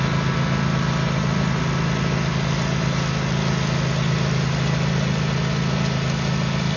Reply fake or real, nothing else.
real